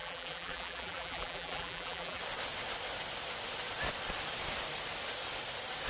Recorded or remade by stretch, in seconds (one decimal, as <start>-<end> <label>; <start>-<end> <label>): 0.0-2.2 remade; 2.2-5.9 recorded